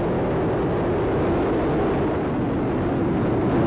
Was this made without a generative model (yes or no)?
yes